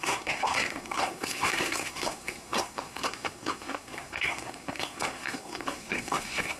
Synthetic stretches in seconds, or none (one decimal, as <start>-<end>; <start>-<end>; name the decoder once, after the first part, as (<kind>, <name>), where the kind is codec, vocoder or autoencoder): 0.0-6.6 (codec, SNAC)